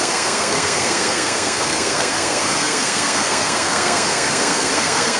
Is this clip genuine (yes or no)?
no